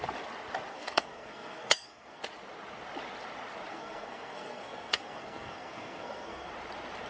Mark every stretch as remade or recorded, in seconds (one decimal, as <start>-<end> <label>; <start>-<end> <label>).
0.0-0.7 recorded; 0.7-2.2 remade; 2.2-3.7 recorded; 3.7-6.5 remade; 6.5-7.1 recorded